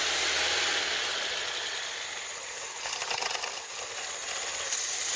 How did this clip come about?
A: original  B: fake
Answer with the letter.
A